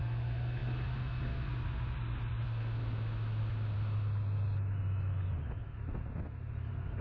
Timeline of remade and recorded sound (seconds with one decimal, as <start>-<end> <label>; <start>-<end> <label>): 0.0-7.0 recorded